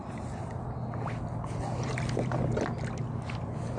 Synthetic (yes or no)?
no